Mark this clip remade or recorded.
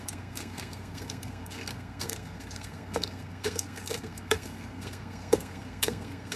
remade